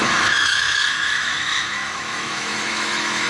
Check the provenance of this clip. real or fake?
fake